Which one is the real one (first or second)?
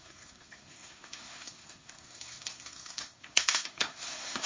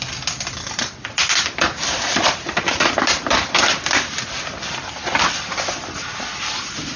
second